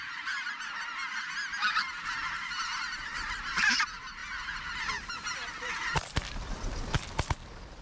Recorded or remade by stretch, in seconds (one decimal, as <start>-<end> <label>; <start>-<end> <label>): 0.0-1.7 recorded; 1.7-3.8 remade; 3.8-7.8 recorded